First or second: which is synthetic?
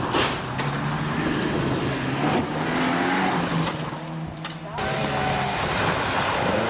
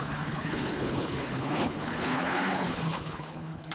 second